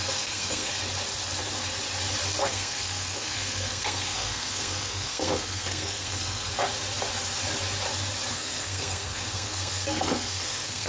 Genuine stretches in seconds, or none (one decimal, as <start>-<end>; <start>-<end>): 0.7-2.4; 6.5-8.3